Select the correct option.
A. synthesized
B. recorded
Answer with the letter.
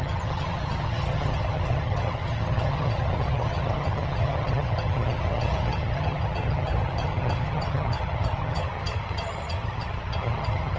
A